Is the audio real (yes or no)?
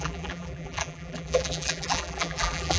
no